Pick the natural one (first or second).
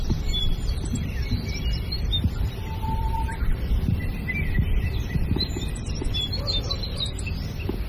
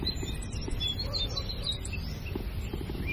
second